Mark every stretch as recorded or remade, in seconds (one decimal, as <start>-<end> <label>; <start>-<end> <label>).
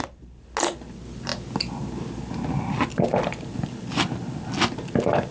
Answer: 0.0-5.3 recorded